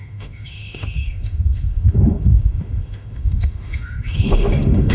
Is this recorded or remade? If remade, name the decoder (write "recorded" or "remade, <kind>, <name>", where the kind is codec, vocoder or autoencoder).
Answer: remade, autoencoder, DAC-VAE